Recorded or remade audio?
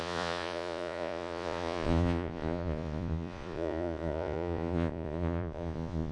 remade